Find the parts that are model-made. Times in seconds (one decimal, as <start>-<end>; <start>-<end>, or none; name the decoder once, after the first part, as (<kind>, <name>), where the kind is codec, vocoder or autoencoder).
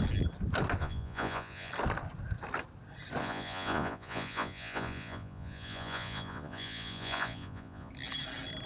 0.8-1.7 (vocoder, Vocos); 3.2-7.9